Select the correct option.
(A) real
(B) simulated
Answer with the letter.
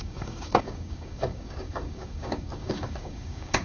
B